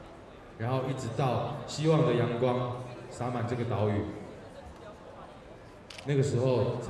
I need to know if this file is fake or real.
real